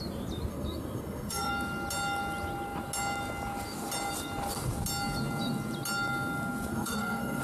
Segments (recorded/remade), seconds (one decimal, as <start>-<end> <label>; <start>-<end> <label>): 0.0-0.5 recorded; 0.5-1.5 remade; 1.5-6.7 recorded; 6.7-7.4 remade